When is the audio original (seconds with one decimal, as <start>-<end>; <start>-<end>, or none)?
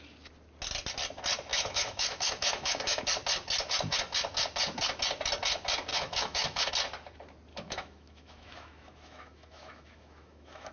0.0-1.5; 3.0-5.9; 6.7-7.5